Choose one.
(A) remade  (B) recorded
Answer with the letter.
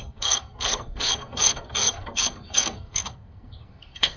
A